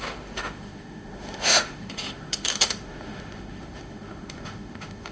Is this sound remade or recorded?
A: remade